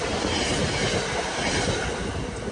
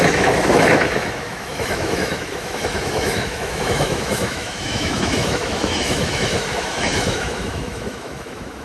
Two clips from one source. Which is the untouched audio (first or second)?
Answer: first